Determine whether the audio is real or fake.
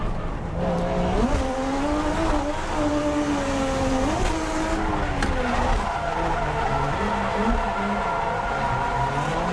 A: real